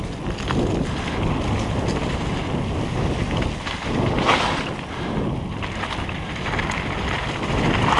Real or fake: real